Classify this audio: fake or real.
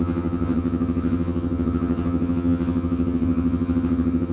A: fake